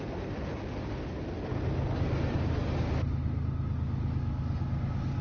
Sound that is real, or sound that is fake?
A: real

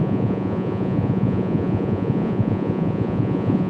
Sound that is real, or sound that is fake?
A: fake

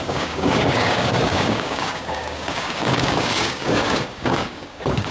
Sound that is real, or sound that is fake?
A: fake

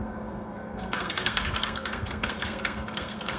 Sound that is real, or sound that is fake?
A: fake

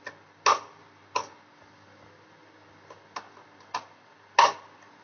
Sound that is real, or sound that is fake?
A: real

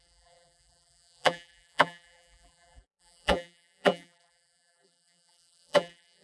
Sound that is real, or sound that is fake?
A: fake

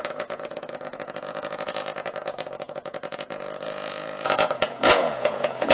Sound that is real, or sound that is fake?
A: fake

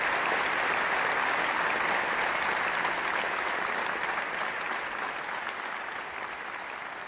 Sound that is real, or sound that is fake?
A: real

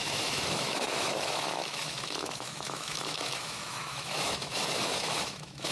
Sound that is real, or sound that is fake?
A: fake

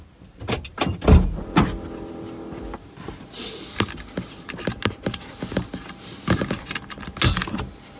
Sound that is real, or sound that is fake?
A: real